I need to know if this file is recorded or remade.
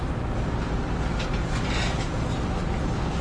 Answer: recorded